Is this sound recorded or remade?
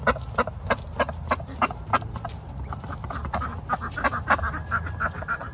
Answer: recorded